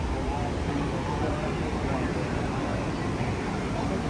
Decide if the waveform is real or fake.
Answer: real